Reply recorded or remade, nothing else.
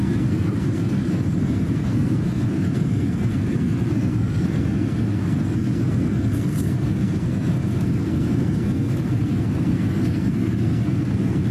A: remade